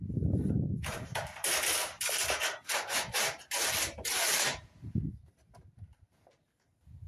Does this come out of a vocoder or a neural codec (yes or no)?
yes